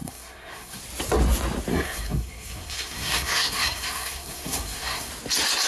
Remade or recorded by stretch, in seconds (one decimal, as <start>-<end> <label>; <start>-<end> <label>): 0.0-0.8 remade; 0.8-1.7 recorded; 1.7-5.1 remade; 5.1-5.7 recorded